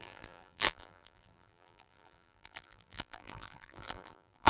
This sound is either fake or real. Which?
fake